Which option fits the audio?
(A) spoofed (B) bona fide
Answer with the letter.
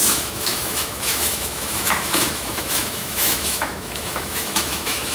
A